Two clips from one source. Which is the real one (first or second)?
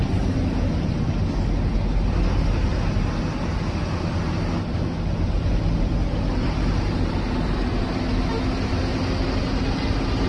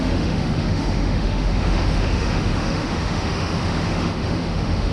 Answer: first